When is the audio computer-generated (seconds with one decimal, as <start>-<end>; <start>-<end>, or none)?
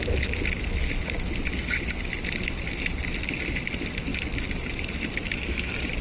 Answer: none